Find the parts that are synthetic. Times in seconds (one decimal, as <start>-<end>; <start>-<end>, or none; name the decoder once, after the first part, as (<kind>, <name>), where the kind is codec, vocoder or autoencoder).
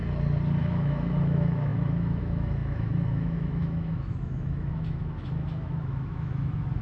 0.6-6.8 (autoencoder, DAC-VAE)